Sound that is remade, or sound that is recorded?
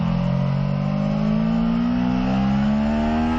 recorded